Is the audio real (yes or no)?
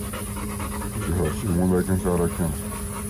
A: yes